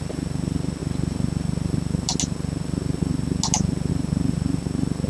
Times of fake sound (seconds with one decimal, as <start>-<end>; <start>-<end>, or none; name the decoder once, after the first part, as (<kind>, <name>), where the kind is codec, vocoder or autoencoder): none